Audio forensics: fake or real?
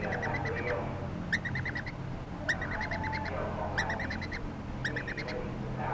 real